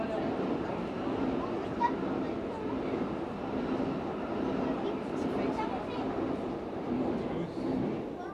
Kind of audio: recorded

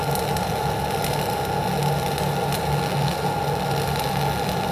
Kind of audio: recorded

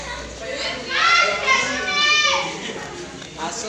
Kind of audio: recorded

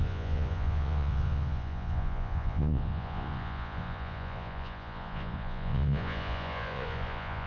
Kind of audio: remade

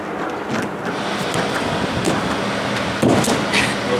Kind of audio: recorded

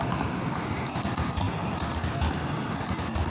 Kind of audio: recorded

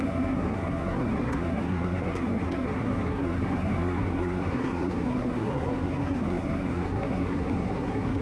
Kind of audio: remade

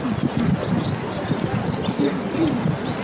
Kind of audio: recorded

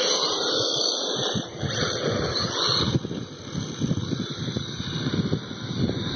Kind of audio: recorded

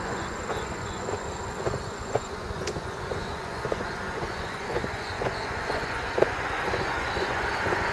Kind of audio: remade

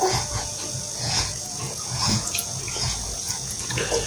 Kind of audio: remade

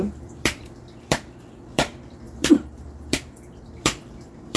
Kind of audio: remade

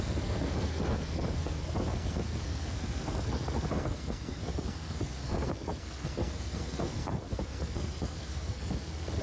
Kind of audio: remade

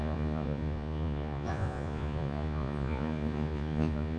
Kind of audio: remade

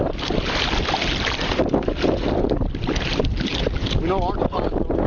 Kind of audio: recorded